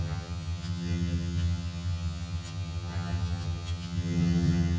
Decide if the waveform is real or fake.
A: fake